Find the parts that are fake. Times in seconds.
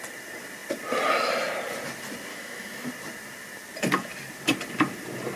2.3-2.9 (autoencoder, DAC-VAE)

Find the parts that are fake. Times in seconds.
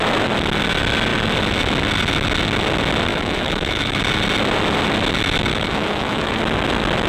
3.1-4.0 (autoencoder, DAC-VAE); 5.5-6.4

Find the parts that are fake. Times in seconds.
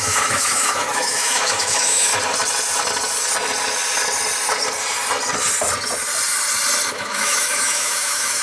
0.0-2.1 (autoencoder, DAC-VAE); 6.9-8.4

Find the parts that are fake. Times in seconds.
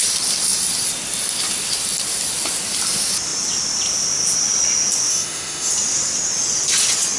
5.1-5.7 (autoencoder, DAC-VAE)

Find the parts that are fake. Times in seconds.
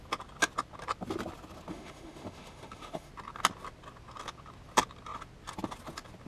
1.7-3.1 (autoencoder, DAC-VAE)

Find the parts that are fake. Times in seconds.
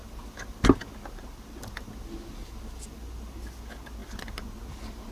none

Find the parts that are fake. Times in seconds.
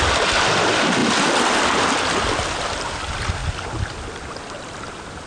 none